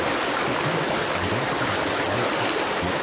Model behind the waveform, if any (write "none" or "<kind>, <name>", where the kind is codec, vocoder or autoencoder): none